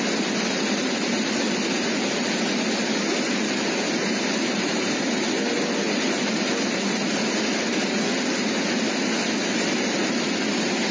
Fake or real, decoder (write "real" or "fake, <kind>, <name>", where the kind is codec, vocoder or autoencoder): real